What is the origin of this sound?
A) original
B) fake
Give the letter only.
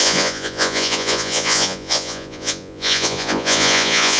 B